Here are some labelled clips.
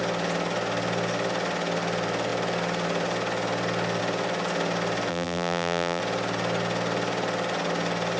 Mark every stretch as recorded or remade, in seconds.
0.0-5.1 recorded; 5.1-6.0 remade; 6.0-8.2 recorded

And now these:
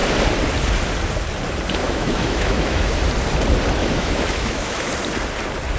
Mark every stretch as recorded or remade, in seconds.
0.0-1.8 recorded; 1.8-2.9 remade; 2.9-3.8 recorded; 3.8-4.9 remade; 4.9-5.8 recorded

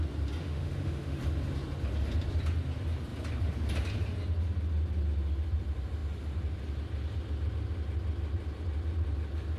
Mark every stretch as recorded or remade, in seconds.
0.0-0.4 recorded; 0.4-1.2 remade; 1.2-9.6 recorded